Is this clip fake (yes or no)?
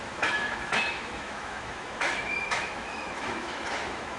yes